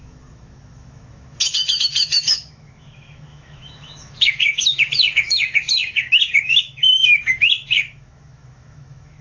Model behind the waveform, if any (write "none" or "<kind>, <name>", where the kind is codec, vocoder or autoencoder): autoencoder, DAC-VAE